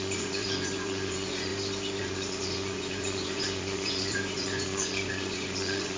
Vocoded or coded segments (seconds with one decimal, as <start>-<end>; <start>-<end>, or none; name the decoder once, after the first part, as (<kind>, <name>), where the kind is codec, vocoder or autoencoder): 0.0-1.5 (vocoder, Vocos); 2.0-6.0